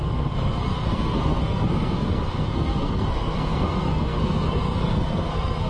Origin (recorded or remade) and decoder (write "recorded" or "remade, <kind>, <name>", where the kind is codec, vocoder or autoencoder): remade, codec, SNAC